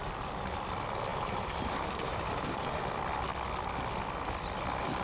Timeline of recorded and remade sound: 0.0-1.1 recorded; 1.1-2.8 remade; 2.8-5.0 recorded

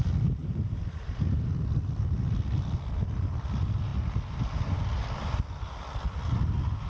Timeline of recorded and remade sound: 0.0-0.4 recorded; 0.4-1.5 remade; 1.5-6.9 recorded

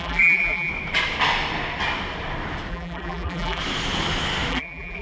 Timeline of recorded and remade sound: 0.0-0.7 remade; 0.7-2.7 recorded; 2.7-3.6 remade; 3.6-4.5 recorded; 4.5-5.0 remade

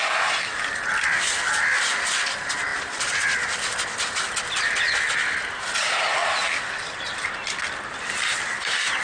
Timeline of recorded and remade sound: 0.0-9.0 recorded